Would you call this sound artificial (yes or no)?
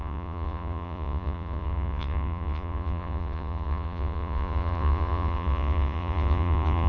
yes